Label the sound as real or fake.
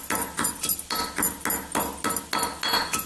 real